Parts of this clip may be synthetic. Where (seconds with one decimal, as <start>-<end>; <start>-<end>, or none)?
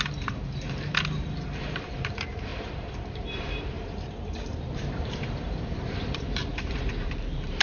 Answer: 0.0-7.6